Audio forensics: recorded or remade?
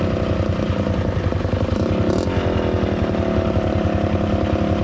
recorded